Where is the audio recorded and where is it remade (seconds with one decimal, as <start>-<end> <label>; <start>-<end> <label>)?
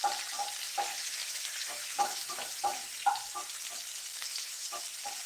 0.0-0.9 recorded; 0.9-3.1 remade; 3.1-4.1 recorded; 4.1-4.8 remade; 4.8-5.3 recorded